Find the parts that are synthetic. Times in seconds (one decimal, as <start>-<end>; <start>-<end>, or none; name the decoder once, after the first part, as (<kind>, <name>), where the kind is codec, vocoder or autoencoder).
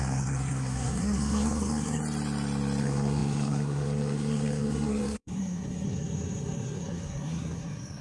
0.0-2.0 (codec, SNAC); 2.8-8.0